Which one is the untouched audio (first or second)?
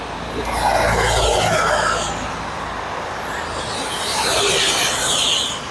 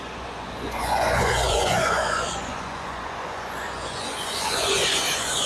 first